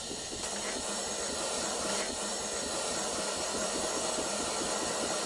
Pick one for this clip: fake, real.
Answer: fake